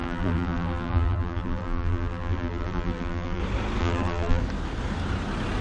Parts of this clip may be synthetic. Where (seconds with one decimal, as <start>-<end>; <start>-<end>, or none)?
0.0-3.4; 3.8-4.4